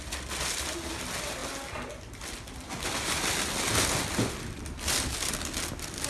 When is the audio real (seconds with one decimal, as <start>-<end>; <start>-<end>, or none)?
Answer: 0.0-6.1